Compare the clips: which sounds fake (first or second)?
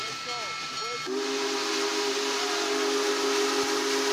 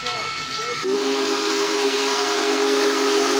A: second